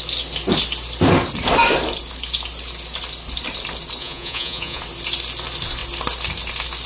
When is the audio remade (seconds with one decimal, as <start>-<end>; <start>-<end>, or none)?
4.0-4.8